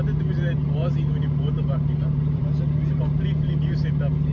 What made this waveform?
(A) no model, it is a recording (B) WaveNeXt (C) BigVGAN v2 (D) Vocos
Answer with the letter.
C